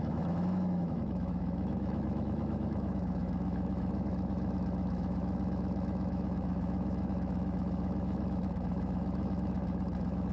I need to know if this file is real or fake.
fake